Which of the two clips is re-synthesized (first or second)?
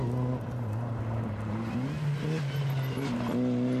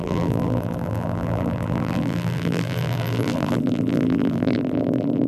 second